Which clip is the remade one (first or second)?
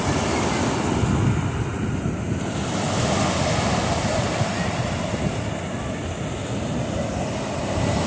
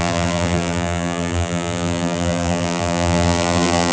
second